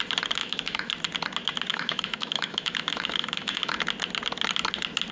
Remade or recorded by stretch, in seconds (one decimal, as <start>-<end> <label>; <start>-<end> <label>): 0.0-0.4 recorded; 0.4-0.9 remade; 0.9-1.7 recorded; 1.7-3.8 remade; 3.8-5.1 recorded

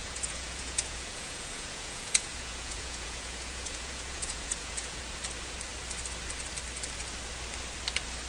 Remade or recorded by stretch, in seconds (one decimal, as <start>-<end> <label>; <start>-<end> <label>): 0.0-5.0 remade; 5.0-8.3 recorded

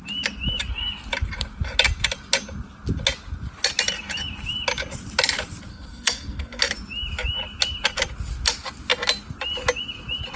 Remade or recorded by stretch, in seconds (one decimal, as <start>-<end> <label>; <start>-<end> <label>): 0.0-5.7 recorded; 5.7-6.6 remade; 6.6-10.4 recorded